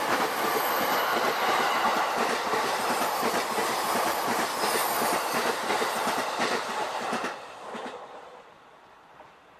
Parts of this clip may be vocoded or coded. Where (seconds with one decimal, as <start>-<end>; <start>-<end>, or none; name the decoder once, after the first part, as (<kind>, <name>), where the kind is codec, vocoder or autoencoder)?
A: none